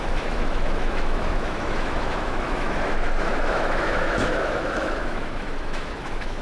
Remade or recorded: remade